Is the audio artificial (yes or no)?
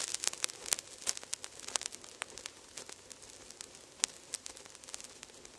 no